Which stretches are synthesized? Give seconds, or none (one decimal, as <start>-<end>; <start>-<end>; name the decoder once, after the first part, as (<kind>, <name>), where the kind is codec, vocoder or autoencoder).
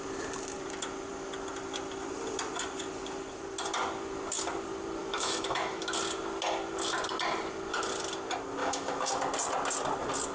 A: 5.0-5.8 (autoencoder, DAC-VAE); 8.6-9.1